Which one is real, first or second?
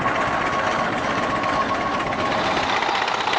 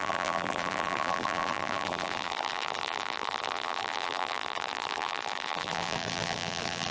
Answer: first